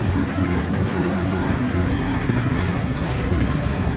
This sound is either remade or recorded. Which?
remade